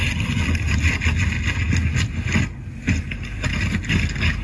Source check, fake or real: real